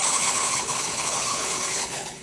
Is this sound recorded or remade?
remade